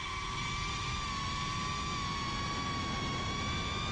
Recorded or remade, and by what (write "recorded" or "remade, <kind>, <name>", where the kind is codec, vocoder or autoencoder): recorded